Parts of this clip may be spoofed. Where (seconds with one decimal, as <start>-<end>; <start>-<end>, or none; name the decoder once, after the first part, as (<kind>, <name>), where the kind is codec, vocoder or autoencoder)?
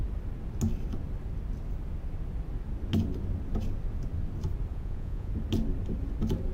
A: 4.7-5.3 (vocoder, Vocos)